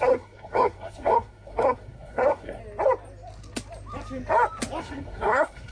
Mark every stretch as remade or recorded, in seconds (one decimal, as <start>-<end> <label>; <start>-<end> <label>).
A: 0.0-2.6 remade; 2.6-4.8 recorded; 4.8-5.7 remade